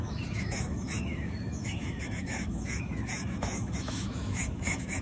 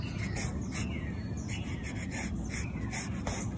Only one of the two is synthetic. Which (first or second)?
first